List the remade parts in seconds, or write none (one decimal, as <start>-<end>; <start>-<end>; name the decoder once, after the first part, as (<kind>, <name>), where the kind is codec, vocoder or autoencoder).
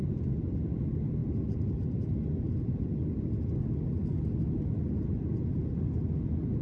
none